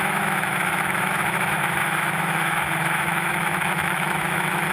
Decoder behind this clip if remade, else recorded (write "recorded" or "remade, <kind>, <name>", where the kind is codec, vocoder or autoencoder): remade, autoencoder, DAC-VAE